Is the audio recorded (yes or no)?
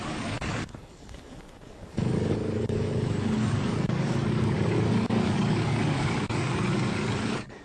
no